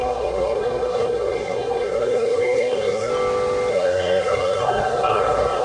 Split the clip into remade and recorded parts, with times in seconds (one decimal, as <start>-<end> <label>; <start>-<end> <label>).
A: 0.0-3.1 remade; 3.1-3.7 recorded; 3.7-5.6 remade